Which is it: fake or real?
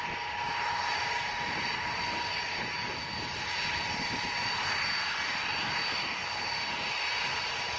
real